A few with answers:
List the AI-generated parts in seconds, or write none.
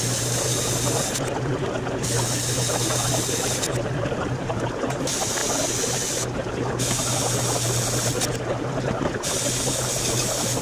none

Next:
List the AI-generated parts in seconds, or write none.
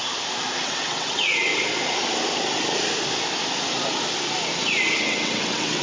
0.6-1.5 (vocoder, WaveNeXt); 5.0-5.8